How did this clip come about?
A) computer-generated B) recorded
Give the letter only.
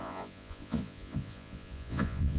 A